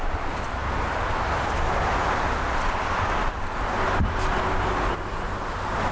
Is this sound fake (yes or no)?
no